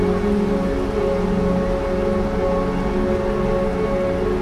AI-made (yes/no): no